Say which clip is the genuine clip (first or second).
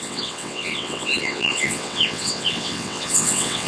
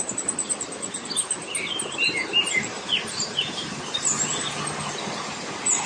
second